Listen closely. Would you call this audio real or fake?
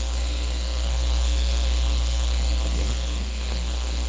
fake